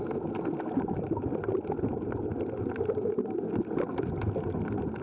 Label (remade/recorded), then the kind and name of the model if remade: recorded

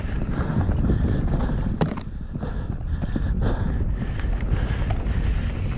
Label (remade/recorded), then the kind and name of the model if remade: recorded